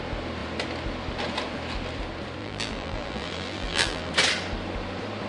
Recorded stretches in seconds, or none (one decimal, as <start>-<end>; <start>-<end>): 0.0-2.4; 4.1-5.3